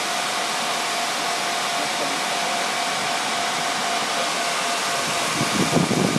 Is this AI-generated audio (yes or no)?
no